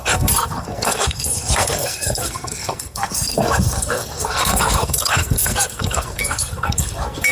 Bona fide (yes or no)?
no